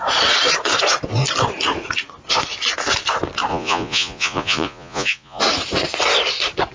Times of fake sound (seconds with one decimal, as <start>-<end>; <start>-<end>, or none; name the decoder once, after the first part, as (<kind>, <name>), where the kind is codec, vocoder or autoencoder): 3.5-5.4 (vocoder, Vocos)